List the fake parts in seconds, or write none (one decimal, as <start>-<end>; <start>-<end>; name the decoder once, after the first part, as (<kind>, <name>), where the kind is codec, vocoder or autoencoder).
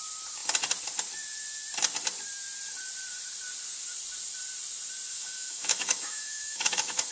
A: 5.1-7.1 (autoencoder, DAC-VAE)